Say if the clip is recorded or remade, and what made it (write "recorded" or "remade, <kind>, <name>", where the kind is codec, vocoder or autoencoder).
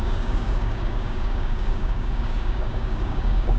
remade, codec, DAC